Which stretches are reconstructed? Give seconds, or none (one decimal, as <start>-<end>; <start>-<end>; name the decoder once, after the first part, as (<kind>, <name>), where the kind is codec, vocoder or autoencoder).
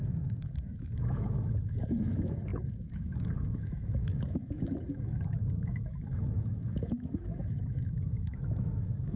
0.0-9.2 (autoencoder, DAC-VAE)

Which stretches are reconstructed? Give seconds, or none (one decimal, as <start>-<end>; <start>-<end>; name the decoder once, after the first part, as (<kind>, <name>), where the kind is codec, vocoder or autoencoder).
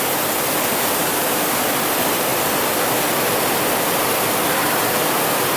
none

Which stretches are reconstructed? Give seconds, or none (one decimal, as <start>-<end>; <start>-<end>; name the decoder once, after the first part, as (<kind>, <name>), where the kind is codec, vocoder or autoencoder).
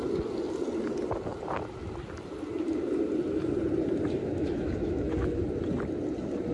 4.2-5.4 (autoencoder, DAC-VAE)